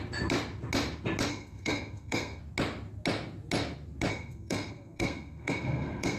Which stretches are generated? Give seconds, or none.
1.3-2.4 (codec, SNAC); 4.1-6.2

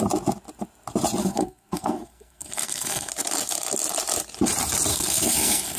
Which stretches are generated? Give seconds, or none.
1.2-3.1 (codec, SNAC); 4.9-5.8

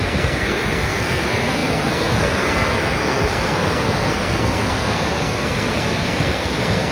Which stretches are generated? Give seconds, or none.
0.0-6.9 (codec, SNAC)